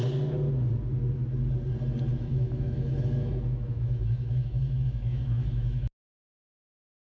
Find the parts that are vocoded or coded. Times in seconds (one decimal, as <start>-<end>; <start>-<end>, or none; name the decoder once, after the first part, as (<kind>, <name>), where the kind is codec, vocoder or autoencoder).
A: 2.1-6.4 (autoencoder, DAC-VAE)